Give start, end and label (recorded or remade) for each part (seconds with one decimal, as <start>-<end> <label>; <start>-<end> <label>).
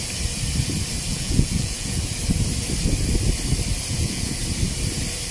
0.0-1.1 recorded; 1.1-2.0 remade; 2.0-3.9 recorded; 3.9-4.4 remade; 4.4-5.3 recorded